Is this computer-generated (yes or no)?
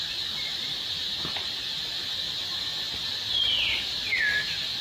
no